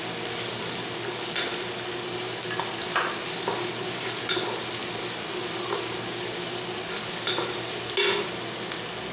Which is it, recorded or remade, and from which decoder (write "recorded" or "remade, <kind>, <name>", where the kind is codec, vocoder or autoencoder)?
recorded